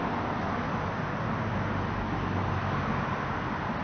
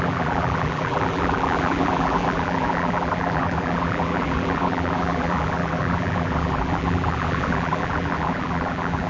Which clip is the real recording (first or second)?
first